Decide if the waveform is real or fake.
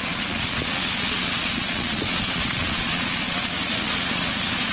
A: fake